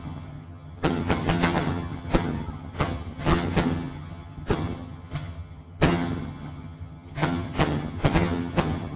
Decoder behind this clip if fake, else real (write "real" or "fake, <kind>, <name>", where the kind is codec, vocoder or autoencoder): fake, vocoder, HiFi-GAN